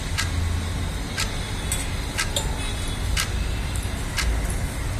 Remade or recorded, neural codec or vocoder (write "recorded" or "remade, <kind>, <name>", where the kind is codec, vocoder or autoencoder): recorded